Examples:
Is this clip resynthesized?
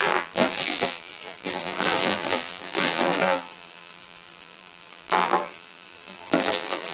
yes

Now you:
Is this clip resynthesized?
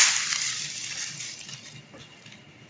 yes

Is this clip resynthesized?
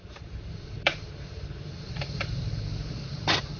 yes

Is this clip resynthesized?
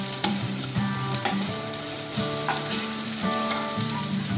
yes